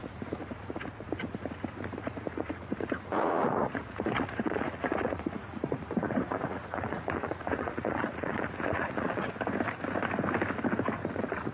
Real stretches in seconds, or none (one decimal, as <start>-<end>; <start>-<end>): 9.3-11.0